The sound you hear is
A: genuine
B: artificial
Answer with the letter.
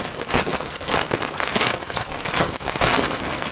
B